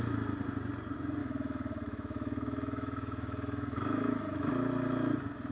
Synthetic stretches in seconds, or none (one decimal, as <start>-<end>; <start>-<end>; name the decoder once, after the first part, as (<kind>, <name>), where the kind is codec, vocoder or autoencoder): 1.2-4.5 (autoencoder, DAC-VAE)

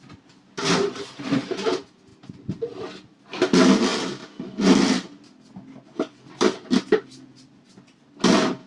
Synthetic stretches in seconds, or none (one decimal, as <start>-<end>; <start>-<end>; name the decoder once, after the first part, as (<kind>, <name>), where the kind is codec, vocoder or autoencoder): none